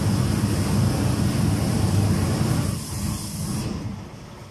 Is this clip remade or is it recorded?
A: recorded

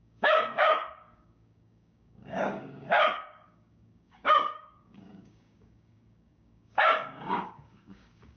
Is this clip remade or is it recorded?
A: remade